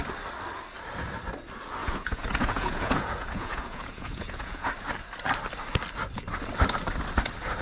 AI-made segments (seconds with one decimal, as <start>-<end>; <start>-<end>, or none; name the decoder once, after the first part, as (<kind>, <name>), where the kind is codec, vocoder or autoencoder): 1.8-4.7 (vocoder, Vocos)